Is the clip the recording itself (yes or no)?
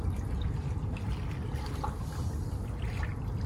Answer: yes